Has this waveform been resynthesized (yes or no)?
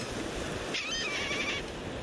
no